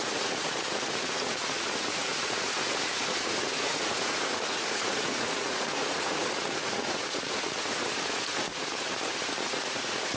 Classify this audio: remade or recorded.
remade